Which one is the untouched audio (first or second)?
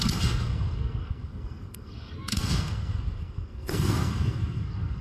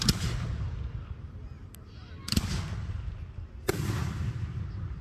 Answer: second